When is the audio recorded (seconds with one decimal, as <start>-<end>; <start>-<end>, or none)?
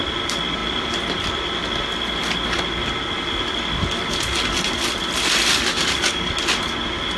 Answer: 0.0-5.5; 6.3-7.2